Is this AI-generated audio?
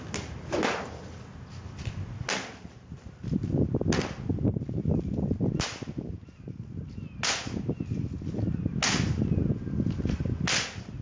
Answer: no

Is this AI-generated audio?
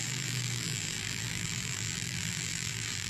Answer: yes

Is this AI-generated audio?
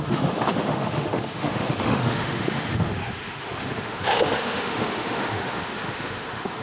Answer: yes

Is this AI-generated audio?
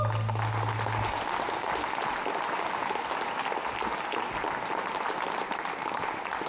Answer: no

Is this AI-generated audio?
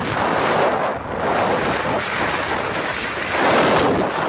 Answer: no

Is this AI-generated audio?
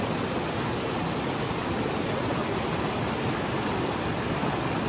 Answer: no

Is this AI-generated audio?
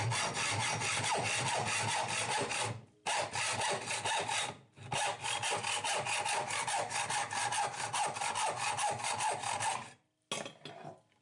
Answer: no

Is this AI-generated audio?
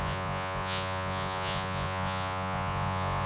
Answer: yes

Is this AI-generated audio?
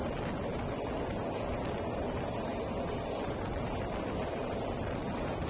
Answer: no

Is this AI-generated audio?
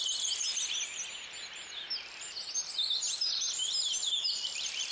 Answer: no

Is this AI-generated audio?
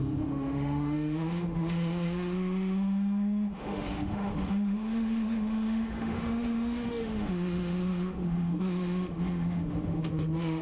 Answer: yes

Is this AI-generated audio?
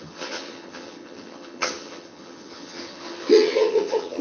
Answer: yes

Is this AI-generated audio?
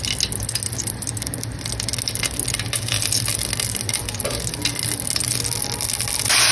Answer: no